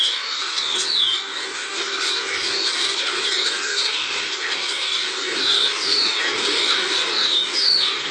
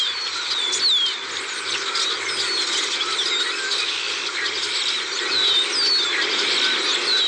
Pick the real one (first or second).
second